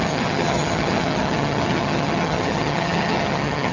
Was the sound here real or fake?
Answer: fake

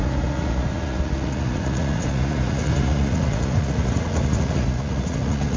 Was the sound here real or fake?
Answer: fake